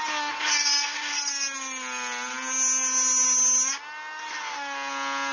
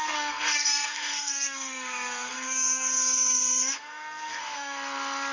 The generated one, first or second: second